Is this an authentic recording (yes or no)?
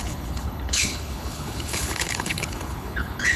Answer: no